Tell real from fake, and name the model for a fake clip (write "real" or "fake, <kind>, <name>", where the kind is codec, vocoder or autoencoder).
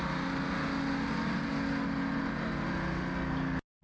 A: real